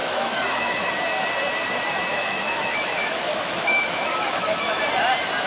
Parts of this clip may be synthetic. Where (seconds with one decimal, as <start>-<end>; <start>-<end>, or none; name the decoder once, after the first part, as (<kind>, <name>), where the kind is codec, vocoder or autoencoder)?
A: 0.0-0.9 (autoencoder, DAC-VAE); 2.1-4.8